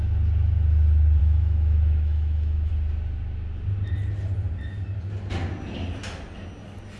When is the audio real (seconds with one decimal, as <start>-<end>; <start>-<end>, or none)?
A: 0.0-1.2; 2.7-7.0